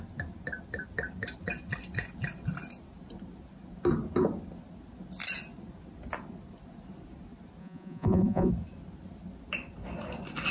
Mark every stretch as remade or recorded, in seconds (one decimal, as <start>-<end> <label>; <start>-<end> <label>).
0.0-7.6 recorded; 7.6-8.5 remade; 8.5-10.5 recorded